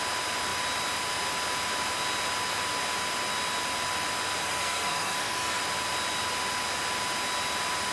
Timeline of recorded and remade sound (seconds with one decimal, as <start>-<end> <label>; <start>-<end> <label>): 0.0-4.4 recorded; 4.4-5.6 remade; 5.6-7.9 recorded